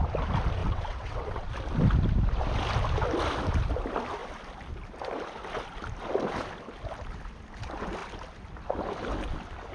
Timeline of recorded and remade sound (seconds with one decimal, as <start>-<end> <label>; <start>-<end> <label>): 0.0-0.6 recorded; 0.6-1.5 remade; 1.5-9.7 recorded

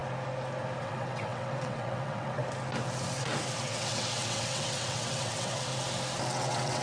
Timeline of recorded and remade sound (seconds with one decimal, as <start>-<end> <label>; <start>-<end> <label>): 0.0-0.8 recorded; 0.8-2.4 remade; 2.4-3.2 recorded; 3.2-5.7 remade; 5.7-6.3 recorded; 6.3-6.8 remade

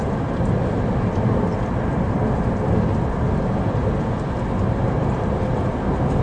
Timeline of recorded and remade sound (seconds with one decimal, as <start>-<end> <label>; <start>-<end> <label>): 0.0-6.2 recorded

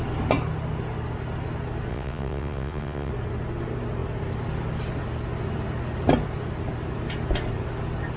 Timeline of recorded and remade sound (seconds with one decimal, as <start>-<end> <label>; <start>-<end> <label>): 0.0-1.9 recorded; 1.9-3.1 remade; 3.1-8.2 recorded

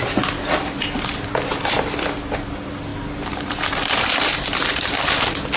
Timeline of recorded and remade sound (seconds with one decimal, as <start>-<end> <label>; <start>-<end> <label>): 0.0-5.6 recorded

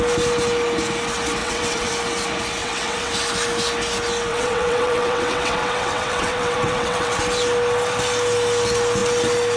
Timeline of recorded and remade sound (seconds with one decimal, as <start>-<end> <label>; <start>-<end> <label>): 0.0-1.4 recorded; 1.4-1.9 remade; 1.9-2.6 recorded; 2.6-3.1 remade; 3.1-4.3 recorded; 4.3-7.2 remade; 7.2-9.6 recorded

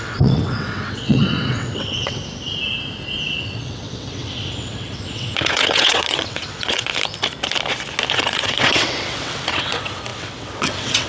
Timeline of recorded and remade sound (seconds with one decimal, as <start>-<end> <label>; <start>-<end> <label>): 0.0-2.2 remade; 2.2-3.4 recorded; 3.4-6.9 remade; 6.9-8.1 recorded; 8.1-11.1 remade